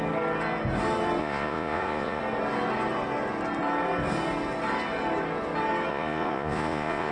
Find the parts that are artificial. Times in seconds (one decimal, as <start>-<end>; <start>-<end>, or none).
1.2-2.2; 5.9-7.1